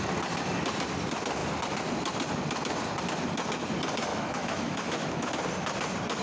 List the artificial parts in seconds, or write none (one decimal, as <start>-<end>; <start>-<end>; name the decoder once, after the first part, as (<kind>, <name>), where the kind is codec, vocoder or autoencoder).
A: 4.1-5.3 (autoencoder, DAC-VAE)